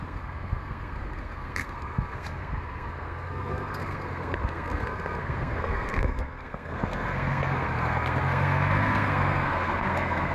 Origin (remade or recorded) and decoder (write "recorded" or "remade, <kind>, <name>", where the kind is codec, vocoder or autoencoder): remade, codec, SNAC